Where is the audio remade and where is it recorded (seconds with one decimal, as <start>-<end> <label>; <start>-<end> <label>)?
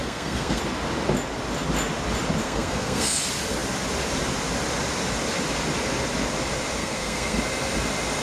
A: 0.0-0.6 remade; 0.6-2.4 recorded; 2.4-3.2 remade; 3.2-6.8 recorded; 6.8-7.4 remade; 7.4-8.2 recorded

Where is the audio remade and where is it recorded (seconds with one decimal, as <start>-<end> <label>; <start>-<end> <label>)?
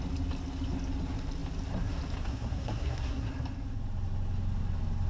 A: 0.0-2.3 recorded; 2.3-3.3 remade; 3.3-5.1 recorded